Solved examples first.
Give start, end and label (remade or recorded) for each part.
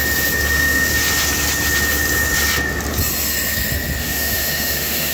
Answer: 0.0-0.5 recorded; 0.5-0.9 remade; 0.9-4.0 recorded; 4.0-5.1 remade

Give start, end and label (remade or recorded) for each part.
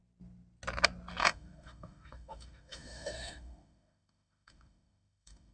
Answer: 0.0-1.2 recorded; 1.2-5.5 remade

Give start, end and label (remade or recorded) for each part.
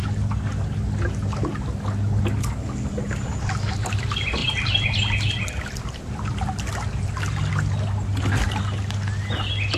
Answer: 0.0-9.8 recorded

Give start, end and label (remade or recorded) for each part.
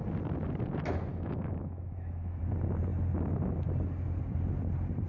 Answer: 0.0-1.1 recorded; 1.1-2.4 remade; 2.4-5.1 recorded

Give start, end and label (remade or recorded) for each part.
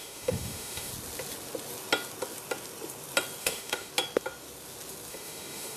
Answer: 0.0-0.9 remade; 0.9-3.4 recorded; 3.4-3.9 remade; 3.9-5.1 recorded; 5.1-5.8 remade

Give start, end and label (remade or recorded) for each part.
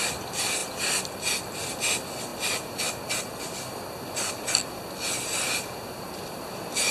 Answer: 0.0-6.9 recorded